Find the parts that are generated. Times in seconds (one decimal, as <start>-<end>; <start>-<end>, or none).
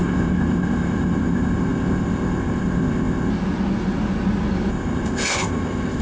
0.0-3.3; 4.7-6.0